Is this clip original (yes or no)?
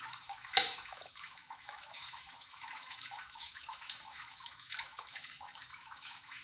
no